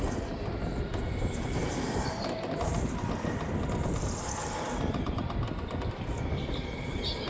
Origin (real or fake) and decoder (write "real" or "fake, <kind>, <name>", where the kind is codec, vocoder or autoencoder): real